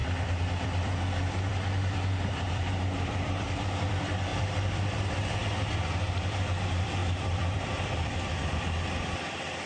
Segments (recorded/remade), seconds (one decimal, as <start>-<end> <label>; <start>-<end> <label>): 0.0-9.7 remade